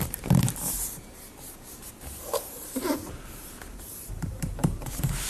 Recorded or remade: remade